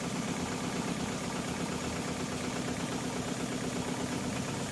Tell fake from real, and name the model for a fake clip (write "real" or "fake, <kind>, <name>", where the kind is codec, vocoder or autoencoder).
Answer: real